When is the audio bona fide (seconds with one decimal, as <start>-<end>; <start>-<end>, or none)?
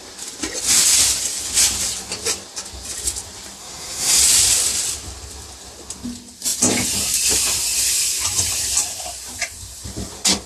0.0-3.6; 4.2-10.5